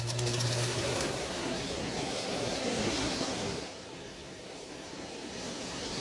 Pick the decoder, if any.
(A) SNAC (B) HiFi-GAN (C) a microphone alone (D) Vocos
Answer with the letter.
A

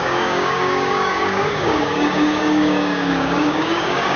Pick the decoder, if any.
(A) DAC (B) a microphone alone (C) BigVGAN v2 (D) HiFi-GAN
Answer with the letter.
A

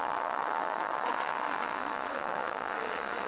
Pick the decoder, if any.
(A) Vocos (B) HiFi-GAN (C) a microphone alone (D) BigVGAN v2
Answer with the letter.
A